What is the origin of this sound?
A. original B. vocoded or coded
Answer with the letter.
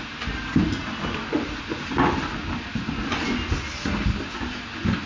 A